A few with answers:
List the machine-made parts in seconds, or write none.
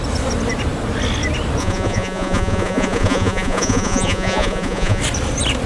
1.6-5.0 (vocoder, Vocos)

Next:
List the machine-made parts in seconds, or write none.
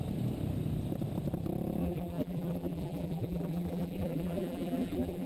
1.8-5.3 (vocoder, BigVGAN v2)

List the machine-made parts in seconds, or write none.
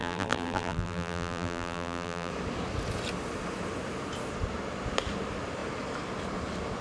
0.0-2.3 (vocoder, BigVGAN v2)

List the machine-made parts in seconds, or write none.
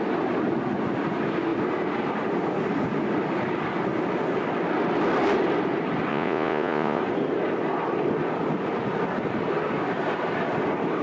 6.1-7.0 (vocoder, Vocos)